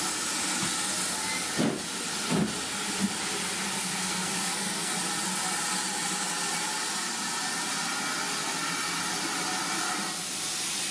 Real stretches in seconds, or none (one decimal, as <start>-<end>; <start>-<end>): 0.0-3.8; 4.9-10.9